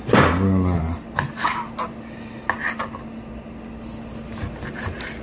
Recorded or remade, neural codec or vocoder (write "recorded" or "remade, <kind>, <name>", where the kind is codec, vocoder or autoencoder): recorded